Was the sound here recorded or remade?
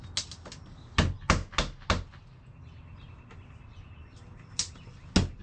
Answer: recorded